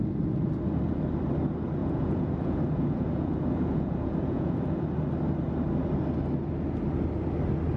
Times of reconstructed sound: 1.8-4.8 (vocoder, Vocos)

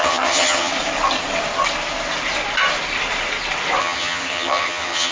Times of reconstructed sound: 0.0-0.7 (vocoder, HiFi-GAN); 3.8-5.1

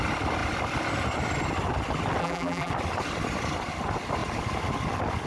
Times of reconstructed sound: 2.2-2.7 (vocoder, BigVGAN v2)

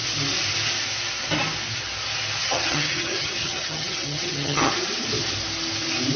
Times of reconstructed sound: 2.4-4.7 (vocoder, HiFi-GAN)

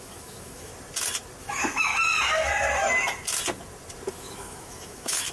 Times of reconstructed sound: 0.0-0.7 (autoencoder, DAC-VAE); 1.4-1.9; 4.1-5.3

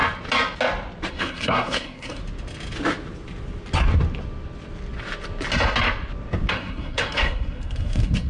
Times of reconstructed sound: 1.1-2.2 (codec, SNAC); 6.5-8.3